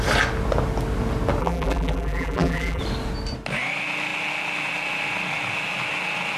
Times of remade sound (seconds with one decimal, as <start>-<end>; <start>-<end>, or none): 1.4-2.8